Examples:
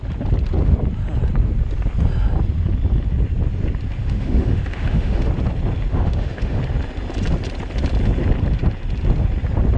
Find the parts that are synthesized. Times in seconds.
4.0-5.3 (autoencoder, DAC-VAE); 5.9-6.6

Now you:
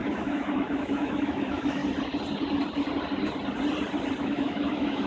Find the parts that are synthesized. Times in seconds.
0.0-1.8 (autoencoder, DAC-VAE); 4.2-5.1

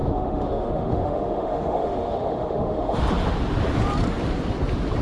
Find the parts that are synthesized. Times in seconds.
0.0-3.0 (autoencoder, DAC-VAE)

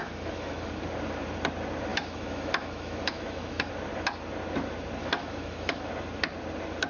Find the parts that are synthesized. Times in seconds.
0.0-0.7 (autoencoder, DAC-VAE); 1.9-3.7; 5.0-5.9

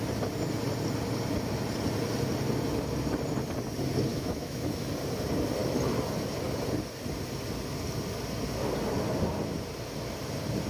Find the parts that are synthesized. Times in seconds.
4.1-4.9 (autoencoder, DAC-VAE)